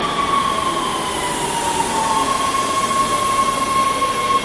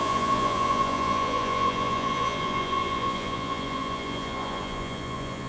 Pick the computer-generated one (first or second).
second